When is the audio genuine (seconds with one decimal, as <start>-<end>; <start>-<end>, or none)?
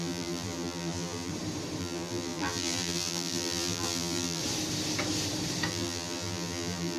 1.3-1.8; 4.4-5.7